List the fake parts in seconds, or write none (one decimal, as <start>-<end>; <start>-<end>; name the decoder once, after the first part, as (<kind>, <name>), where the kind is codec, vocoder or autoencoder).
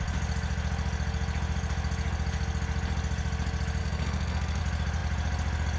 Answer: 3.8-4.6 (codec, SNAC)